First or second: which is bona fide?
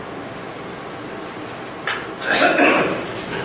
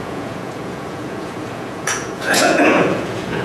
first